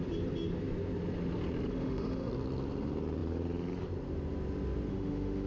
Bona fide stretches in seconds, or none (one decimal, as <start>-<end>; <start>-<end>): 0.0-1.7; 2.3-4.9